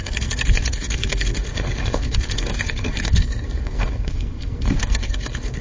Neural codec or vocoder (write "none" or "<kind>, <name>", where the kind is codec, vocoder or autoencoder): codec, SNAC